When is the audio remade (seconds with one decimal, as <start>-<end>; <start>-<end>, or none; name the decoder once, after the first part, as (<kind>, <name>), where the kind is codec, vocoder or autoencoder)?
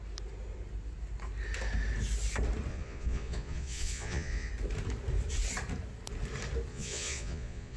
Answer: 2.7-4.5 (vocoder, Vocos); 6.7-7.8